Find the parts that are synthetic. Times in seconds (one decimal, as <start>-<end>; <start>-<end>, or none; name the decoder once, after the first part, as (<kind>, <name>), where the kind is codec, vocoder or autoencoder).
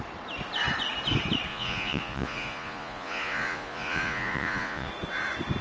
1.5-4.9 (vocoder, Vocos)